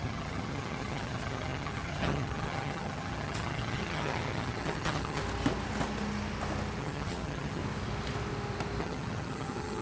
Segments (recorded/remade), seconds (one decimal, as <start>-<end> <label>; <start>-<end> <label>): 0.0-5.2 remade; 5.2-6.8 recorded; 6.8-7.6 remade; 7.6-8.8 recorded; 8.8-9.8 remade